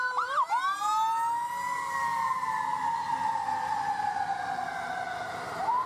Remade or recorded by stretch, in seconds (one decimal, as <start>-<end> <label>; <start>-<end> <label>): 0.0-2.1 recorded; 2.1-5.9 remade